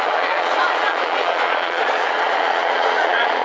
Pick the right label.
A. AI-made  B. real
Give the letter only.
A